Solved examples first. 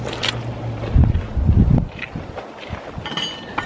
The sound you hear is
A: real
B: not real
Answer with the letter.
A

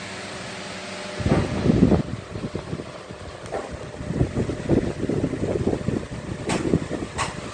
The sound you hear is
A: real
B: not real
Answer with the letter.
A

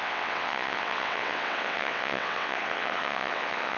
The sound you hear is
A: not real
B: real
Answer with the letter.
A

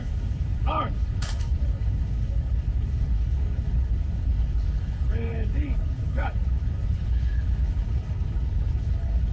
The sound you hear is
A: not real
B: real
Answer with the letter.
A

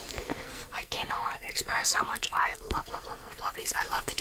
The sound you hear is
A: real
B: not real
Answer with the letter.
B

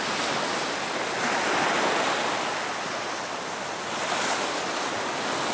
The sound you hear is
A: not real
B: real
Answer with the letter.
B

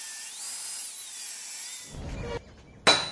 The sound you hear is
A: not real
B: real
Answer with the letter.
B